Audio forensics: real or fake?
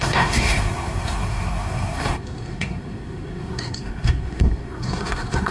fake